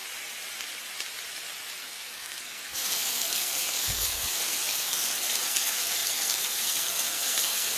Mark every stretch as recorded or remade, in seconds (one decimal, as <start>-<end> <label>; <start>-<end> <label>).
0.0-1.8 recorded; 1.8-7.8 remade